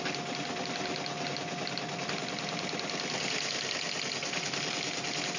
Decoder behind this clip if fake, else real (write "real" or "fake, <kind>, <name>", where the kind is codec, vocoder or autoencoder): real